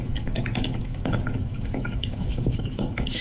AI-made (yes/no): yes